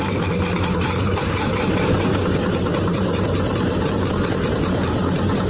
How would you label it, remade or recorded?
remade